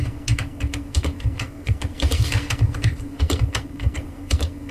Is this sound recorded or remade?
remade